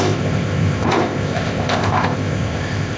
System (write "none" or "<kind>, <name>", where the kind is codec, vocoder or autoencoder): codec, ZipCodec